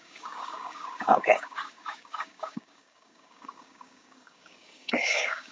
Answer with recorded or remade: remade